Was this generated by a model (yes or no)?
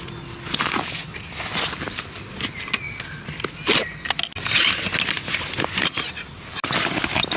no